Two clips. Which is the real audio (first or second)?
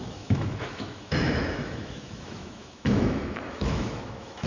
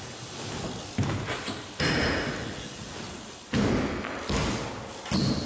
second